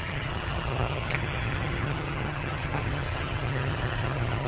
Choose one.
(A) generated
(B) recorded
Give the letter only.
A